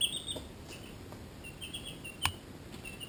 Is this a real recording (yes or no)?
yes